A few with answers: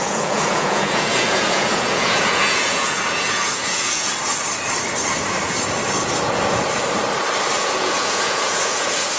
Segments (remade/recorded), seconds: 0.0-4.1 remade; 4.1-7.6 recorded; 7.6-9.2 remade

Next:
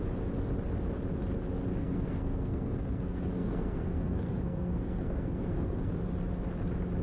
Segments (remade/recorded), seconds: 0.0-1.8 recorded; 1.8-6.0 remade; 6.0-7.0 recorded

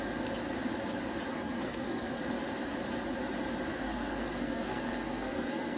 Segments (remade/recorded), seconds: 0.0-1.3 recorded; 1.3-2.2 remade; 2.2-3.7 recorded; 3.7-5.8 remade

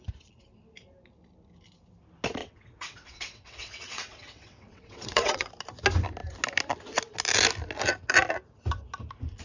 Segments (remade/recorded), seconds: 0.0-2.4 recorded; 2.4-5.5 remade; 5.5-9.4 recorded

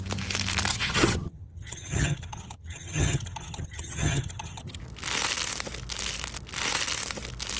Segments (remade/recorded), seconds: 0.0-0.7 recorded; 0.7-4.8 remade; 4.8-7.6 recorded

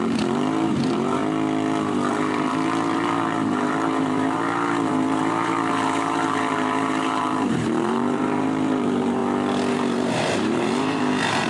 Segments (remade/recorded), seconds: 0.0-1.2 remade; 1.2-2.1 recorded; 2.1-9.2 remade; 9.2-9.7 recorded; 9.7-11.5 remade